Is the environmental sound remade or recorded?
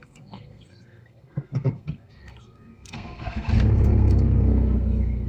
remade